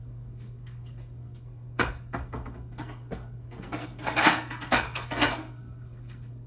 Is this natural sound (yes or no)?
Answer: no